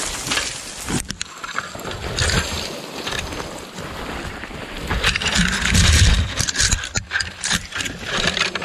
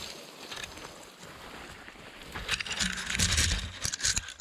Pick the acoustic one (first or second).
second